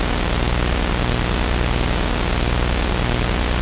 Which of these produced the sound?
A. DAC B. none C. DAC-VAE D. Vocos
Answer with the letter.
B